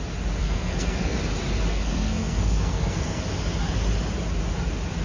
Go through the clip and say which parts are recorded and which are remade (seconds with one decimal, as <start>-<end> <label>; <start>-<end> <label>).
0.0-0.4 recorded; 0.4-1.2 remade; 1.2-1.7 recorded; 1.7-3.2 remade; 3.2-5.0 recorded